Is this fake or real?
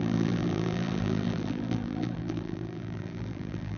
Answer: fake